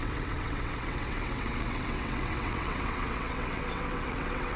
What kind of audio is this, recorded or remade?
remade